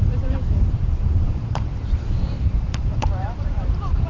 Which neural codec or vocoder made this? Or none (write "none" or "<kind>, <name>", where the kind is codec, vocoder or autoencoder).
vocoder, BigVGAN v2